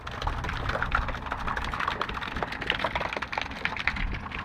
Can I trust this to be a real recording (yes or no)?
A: yes